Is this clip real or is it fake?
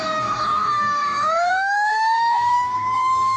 fake